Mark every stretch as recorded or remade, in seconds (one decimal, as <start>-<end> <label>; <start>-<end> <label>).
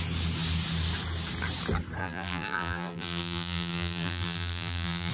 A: 0.0-2.0 recorded; 2.0-5.1 remade